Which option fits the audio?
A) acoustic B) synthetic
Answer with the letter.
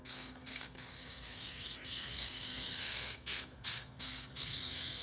B